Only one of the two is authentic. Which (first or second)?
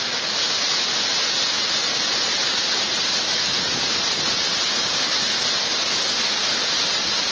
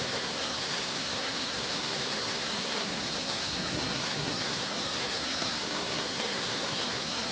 first